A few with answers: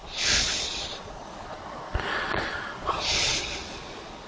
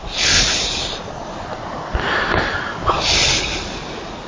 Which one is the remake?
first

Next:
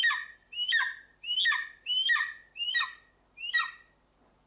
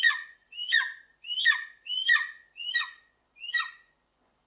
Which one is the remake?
second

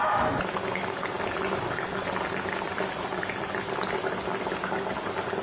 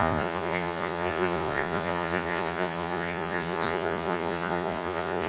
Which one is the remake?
second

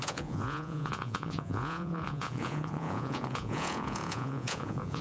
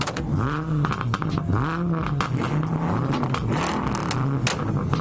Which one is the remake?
first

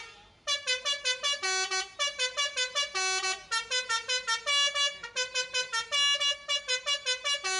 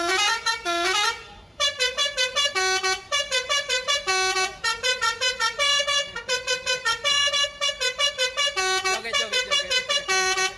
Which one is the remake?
second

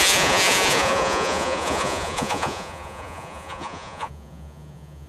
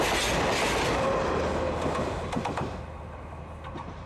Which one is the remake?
first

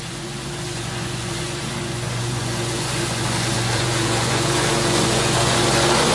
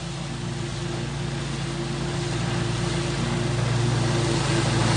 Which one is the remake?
first